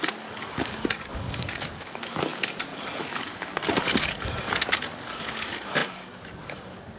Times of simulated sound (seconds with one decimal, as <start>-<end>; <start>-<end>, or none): 0.0-7.0